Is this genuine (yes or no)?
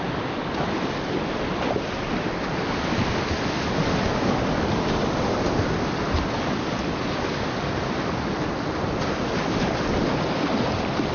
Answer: yes